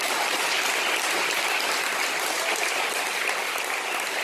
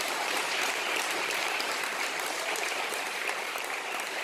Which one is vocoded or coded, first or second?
second